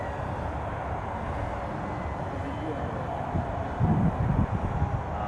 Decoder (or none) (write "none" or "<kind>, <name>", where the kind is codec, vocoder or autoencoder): none